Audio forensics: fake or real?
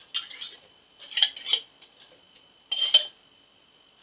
real